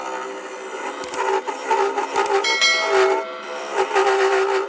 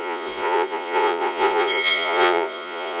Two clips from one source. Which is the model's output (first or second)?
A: second